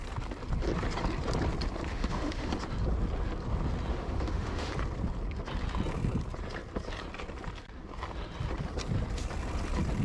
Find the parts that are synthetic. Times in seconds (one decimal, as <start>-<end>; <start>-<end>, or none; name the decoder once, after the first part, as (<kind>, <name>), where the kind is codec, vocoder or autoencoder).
1.9-2.5 (autoencoder, DAC-VAE); 3.9-4.7